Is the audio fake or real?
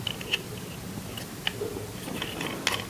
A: real